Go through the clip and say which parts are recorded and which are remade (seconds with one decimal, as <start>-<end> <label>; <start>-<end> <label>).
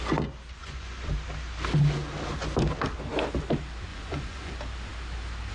0.0-0.6 recorded; 0.6-1.1 remade; 1.1-3.9 recorded; 3.9-4.5 remade; 4.5-5.5 recorded